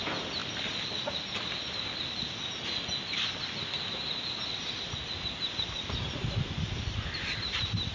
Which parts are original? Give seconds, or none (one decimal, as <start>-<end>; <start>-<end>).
0.0-7.9